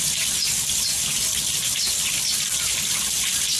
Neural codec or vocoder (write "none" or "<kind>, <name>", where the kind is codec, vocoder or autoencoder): none